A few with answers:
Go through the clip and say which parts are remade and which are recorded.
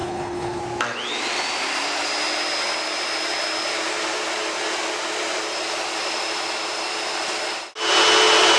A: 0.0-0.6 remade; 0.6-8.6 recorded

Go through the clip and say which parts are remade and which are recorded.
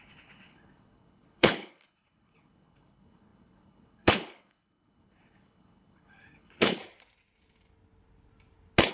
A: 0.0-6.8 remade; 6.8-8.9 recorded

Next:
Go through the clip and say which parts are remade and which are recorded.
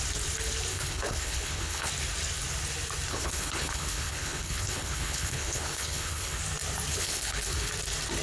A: 0.0-0.7 recorded; 0.7-1.9 remade; 1.9-3.1 recorded; 3.1-6.4 remade; 6.4-6.9 recorded; 6.9-7.7 remade; 7.7-8.2 recorded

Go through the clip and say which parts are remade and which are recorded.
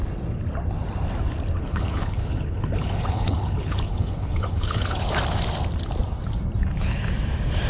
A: 0.0-1.6 recorded; 1.6-5.0 remade; 5.0-7.7 recorded